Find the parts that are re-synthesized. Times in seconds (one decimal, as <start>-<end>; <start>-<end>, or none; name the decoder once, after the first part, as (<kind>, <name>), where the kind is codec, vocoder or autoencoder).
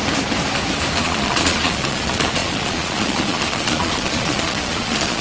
1.0-5.2 (vocoder, Vocos)